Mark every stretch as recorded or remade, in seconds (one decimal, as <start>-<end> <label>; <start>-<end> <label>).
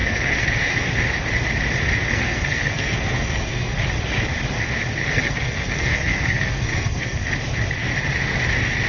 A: 0.0-0.7 remade; 0.7-2.1 recorded; 2.1-3.8 remade; 3.8-5.0 recorded; 5.0-7.3 remade; 7.3-8.9 recorded